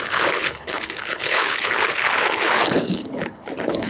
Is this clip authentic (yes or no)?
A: no